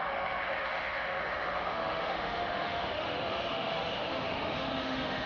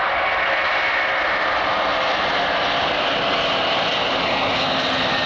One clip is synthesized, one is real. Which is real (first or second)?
second